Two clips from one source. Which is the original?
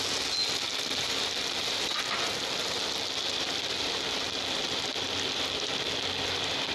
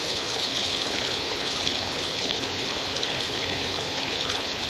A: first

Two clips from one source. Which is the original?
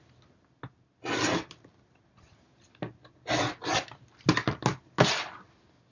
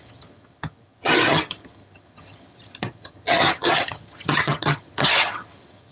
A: first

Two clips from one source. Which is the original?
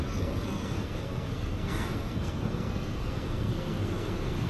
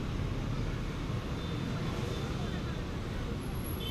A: second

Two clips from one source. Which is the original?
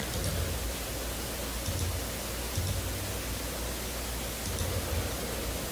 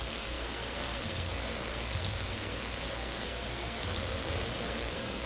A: first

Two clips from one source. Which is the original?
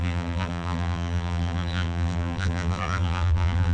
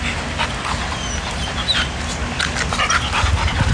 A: second